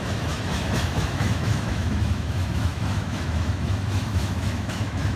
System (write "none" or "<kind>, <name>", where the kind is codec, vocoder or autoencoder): autoencoder, DAC-VAE